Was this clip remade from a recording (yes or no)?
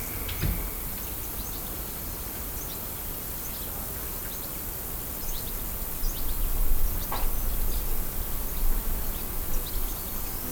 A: no